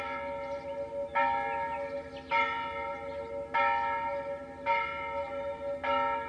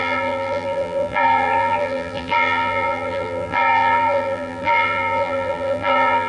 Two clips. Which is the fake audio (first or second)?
second